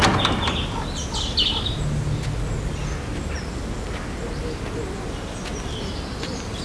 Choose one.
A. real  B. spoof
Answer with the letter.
A